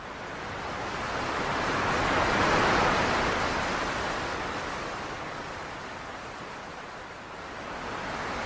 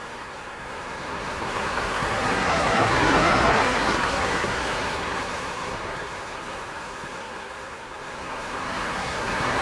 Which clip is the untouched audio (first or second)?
first